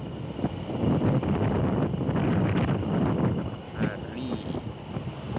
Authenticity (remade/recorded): recorded